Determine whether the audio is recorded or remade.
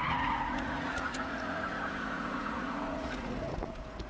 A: remade